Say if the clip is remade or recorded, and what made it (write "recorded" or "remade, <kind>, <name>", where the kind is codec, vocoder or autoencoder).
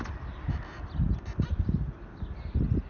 recorded